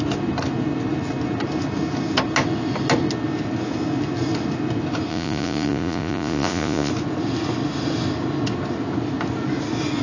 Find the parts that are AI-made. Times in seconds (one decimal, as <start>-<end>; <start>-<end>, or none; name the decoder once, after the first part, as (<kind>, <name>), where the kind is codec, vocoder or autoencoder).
5.1-6.9 (vocoder, Vocos)